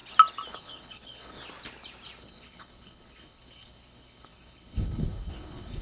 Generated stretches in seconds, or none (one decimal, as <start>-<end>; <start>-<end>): 0.5-1.4; 2.2-5.8

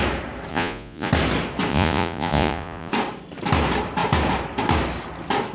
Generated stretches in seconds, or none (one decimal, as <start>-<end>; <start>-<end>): 0.5-1.1; 1.7-2.9

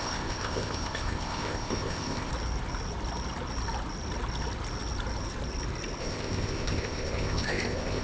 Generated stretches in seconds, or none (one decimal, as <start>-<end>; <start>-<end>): 0.0-2.3; 6.0-8.0